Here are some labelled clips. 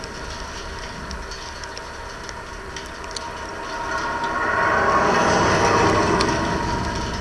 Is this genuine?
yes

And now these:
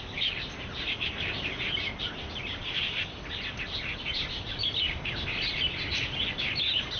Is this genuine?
yes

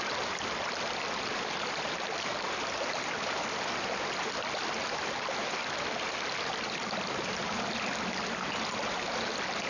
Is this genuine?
yes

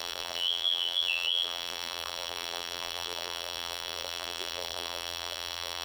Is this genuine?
no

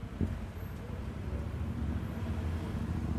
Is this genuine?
yes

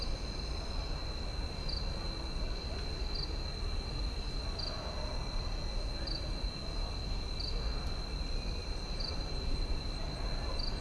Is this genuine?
yes